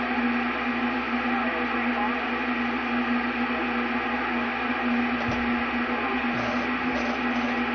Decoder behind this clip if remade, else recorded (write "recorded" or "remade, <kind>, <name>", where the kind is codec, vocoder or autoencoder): recorded